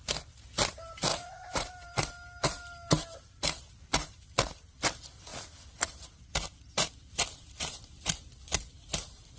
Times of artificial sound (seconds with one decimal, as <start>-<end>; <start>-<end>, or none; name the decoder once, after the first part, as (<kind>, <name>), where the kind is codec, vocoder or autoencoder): 1.1-1.7 (vocoder, Vocos)